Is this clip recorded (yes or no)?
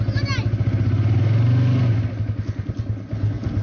yes